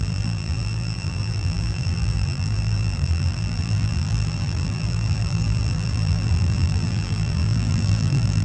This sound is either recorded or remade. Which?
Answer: remade